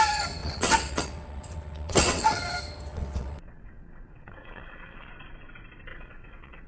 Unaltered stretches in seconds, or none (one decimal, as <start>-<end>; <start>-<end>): 0.0-0.4; 2.4-2.9; 5.1-5.9

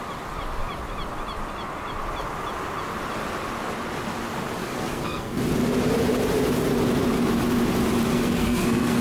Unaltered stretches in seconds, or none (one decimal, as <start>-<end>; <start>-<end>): 0.0-4.6; 5.4-8.1

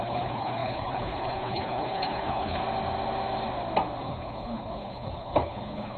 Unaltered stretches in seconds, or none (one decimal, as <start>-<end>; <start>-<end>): 2.6-4.0